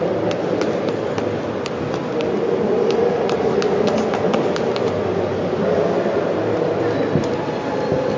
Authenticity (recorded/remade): recorded